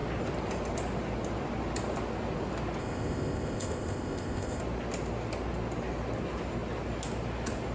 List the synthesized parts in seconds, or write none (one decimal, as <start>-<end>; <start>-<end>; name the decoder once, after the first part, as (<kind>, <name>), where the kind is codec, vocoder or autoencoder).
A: 2.8-4.6 (codec, ZipCodec)